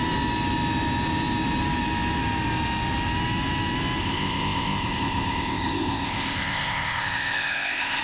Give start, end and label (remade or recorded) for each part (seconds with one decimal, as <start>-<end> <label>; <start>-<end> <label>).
0.0-4.0 recorded; 4.0-8.0 remade